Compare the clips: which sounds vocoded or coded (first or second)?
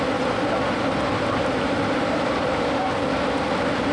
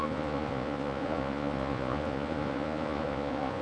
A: second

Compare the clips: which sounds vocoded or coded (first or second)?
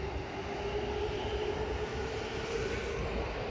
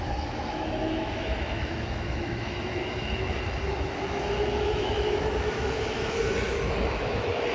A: second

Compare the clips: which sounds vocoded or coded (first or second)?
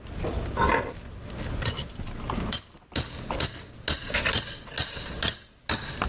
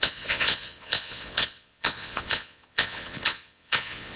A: second